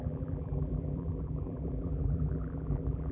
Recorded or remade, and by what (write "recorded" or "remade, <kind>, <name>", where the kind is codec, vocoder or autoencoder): remade, vocoder, BigVGAN v2